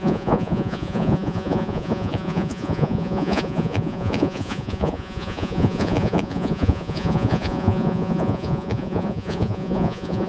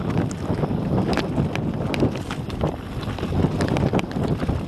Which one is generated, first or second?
first